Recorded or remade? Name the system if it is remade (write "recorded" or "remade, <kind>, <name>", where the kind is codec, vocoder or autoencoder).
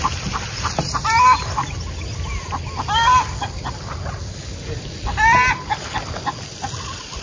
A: recorded